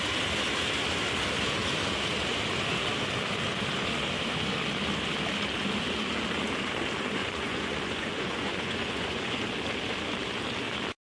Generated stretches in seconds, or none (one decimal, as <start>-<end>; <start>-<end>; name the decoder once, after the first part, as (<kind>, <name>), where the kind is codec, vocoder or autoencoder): 7.2-9.4 (vocoder, Vocos)